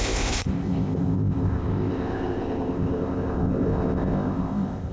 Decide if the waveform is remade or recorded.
remade